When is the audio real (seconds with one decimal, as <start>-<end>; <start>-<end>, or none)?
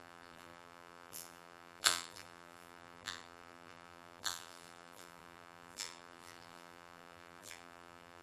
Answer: none